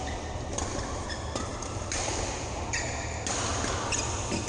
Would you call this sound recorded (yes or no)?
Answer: yes